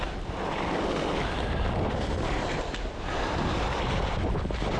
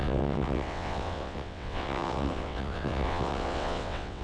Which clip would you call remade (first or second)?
second